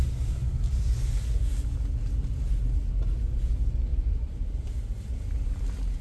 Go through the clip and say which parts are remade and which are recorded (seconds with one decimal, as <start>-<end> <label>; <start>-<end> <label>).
0.0-3.9 recorded; 3.9-4.4 remade; 4.4-6.0 recorded